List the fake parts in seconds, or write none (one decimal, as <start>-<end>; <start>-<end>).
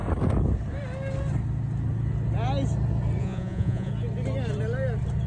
3.2-3.9